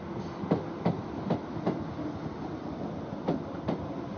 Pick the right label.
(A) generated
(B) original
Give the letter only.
B